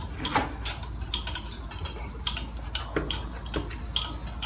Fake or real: real